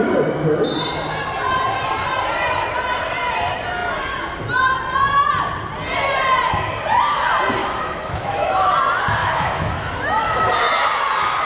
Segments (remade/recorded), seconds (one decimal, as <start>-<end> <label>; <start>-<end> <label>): 0.0-7.6 recorded; 7.6-8.7 remade; 8.7-9.2 recorded; 9.2-10.5 remade; 10.5-11.5 recorded